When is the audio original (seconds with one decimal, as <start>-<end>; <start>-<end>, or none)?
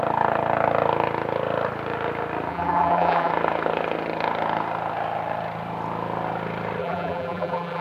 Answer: 0.0-2.5; 3.3-6.8